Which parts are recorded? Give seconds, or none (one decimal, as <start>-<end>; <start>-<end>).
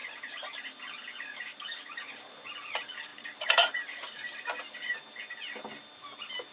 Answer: 0.6-1.5; 2.2-3.1; 4.4-6.5